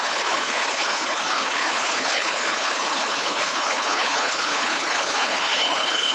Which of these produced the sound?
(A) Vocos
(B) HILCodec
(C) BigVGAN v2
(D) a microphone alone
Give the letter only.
B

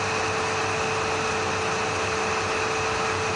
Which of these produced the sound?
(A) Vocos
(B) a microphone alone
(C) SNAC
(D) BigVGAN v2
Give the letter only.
B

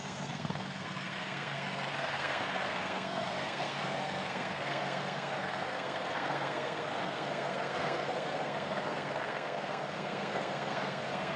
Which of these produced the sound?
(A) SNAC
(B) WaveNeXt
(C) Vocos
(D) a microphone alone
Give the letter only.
A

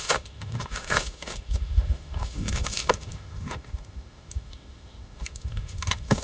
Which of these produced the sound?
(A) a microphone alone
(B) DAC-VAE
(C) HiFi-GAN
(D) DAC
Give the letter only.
B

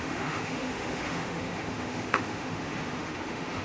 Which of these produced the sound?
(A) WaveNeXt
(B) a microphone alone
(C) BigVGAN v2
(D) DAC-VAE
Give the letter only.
D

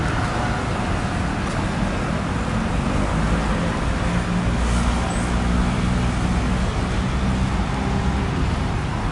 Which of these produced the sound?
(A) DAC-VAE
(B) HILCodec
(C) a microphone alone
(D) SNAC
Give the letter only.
C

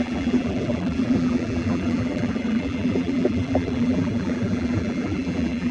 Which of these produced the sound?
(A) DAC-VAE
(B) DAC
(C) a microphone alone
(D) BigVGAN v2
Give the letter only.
D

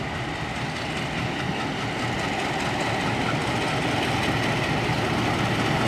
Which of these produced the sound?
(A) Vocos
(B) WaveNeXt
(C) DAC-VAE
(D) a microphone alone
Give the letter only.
D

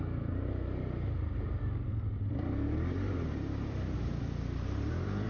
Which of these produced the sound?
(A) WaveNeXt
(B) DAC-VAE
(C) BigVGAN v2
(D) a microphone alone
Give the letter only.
C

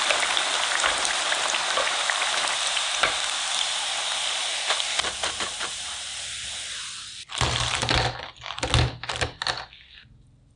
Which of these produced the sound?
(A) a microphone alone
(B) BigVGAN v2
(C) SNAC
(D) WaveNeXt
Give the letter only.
A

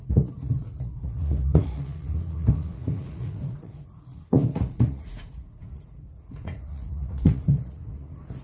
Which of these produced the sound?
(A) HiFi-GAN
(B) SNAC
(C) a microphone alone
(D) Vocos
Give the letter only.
D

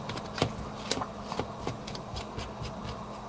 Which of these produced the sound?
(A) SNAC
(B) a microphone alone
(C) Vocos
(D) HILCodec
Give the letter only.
B